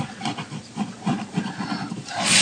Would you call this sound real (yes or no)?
no